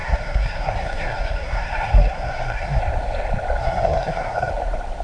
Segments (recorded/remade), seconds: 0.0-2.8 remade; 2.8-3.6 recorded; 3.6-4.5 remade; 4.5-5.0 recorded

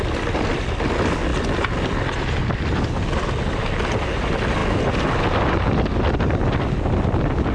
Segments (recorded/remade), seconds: 0.0-7.5 recorded

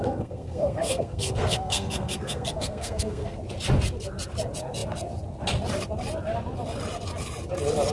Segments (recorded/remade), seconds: 0.0-3.4 remade; 3.4-7.9 recorded

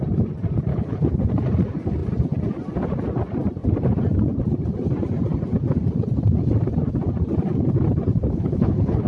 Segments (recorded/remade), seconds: 0.0-0.7 recorded; 0.7-1.3 remade; 1.3-8.2 recorded; 8.2-9.1 remade

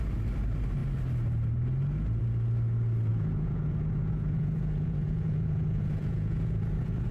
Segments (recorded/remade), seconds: 0.0-3.1 recorded; 3.1-7.1 remade

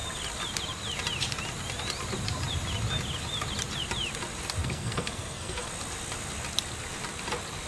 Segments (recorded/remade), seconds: 0.0-4.6 recorded; 4.6-5.7 remade; 5.7-7.7 recorded